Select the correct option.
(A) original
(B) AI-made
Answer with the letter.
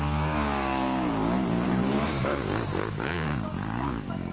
B